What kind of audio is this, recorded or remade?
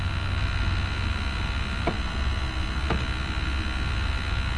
recorded